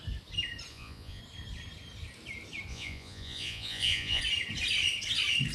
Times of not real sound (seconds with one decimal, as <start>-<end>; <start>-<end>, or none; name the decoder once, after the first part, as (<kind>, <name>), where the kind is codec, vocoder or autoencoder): 0.7-1.2 (vocoder, Vocos); 2.7-4.2